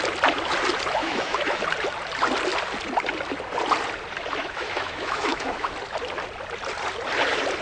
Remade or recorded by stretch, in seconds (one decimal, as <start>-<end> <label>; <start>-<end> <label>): 0.0-1.0 recorded; 1.0-1.6 remade; 1.6-4.4 recorded; 4.4-5.7 remade; 5.7-7.6 recorded